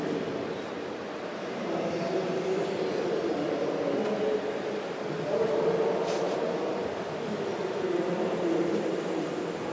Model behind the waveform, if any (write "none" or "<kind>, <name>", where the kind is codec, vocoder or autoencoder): none